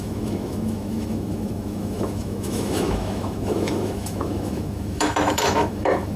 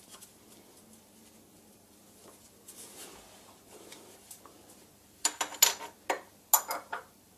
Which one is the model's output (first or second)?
first